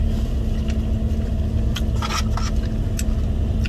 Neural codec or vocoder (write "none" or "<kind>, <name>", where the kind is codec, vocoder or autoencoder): none